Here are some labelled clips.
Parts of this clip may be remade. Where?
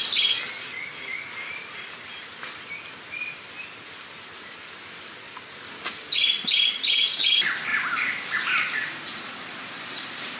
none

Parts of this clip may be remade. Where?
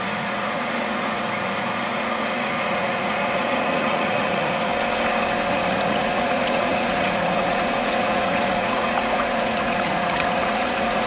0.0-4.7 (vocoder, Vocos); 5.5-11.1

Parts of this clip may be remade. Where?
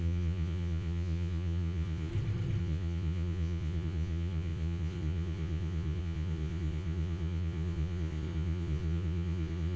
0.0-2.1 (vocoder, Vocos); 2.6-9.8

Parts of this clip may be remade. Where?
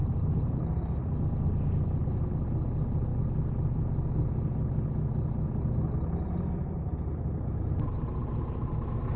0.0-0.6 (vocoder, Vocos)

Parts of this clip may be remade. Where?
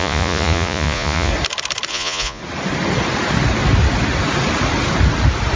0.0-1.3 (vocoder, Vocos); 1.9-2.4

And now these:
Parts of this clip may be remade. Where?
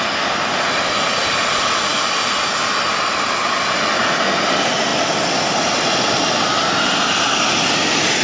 none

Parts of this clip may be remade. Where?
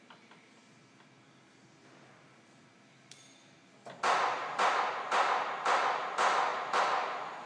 none